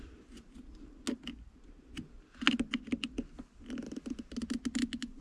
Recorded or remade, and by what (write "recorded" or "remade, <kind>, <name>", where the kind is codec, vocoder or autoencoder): recorded